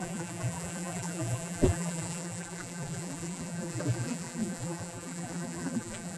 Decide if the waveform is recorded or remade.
remade